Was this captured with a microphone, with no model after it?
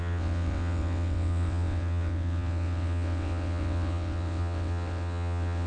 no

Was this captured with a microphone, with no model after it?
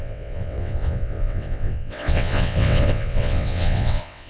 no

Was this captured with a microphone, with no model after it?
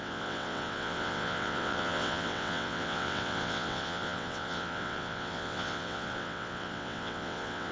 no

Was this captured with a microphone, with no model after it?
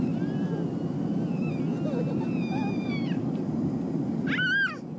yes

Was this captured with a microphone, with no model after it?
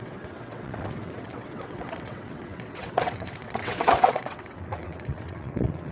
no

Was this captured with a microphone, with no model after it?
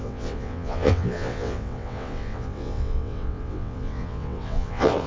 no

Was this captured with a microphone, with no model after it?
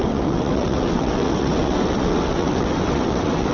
no